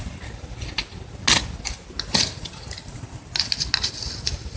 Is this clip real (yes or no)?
yes